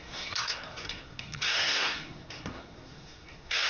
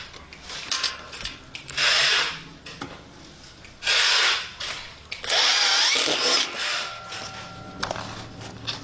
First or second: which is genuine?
second